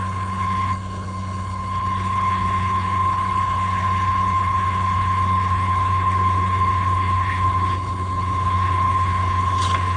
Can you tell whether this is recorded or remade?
remade